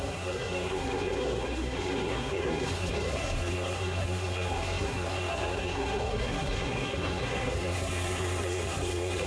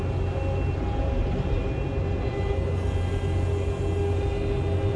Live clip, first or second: second